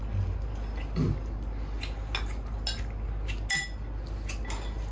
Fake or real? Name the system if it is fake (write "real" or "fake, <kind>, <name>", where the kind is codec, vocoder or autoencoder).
real